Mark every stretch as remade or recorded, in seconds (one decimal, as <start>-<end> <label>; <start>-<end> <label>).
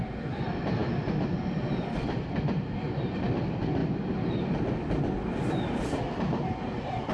0.0-7.1 recorded